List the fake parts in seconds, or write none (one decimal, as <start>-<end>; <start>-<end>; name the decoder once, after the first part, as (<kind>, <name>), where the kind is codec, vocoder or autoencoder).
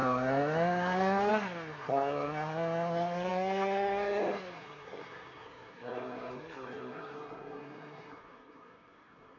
0.0-9.4 (codec, SNAC)